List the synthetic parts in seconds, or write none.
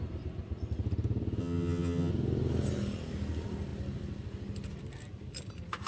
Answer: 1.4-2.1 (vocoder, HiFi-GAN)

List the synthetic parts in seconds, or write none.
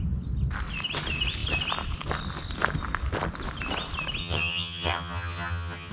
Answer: 4.2-5.9 (vocoder, HiFi-GAN)